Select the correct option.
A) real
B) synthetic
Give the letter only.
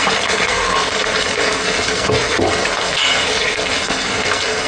B